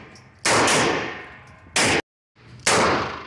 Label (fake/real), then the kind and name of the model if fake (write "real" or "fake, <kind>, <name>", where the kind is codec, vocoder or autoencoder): real